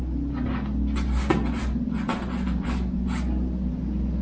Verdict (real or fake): real